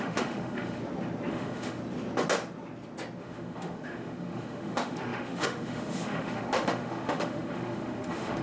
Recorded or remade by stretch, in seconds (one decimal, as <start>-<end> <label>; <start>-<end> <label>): 0.0-0.8 remade; 0.8-1.3 recorded; 1.3-1.8 remade; 1.8-3.2 recorded; 3.2-8.4 remade